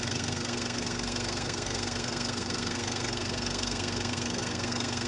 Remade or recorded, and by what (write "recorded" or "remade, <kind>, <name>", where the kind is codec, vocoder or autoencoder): remade, codec, SNAC